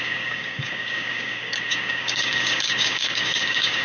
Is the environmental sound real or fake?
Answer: fake